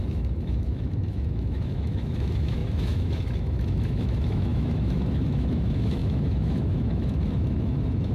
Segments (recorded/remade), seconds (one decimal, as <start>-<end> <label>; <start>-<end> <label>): 0.0-8.1 remade